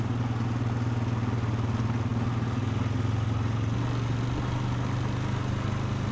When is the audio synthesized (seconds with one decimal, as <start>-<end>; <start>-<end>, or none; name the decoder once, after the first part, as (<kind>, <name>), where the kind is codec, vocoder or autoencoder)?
none